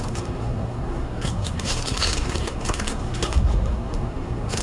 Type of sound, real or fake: fake